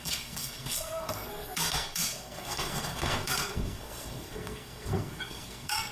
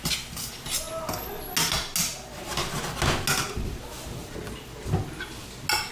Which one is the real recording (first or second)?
second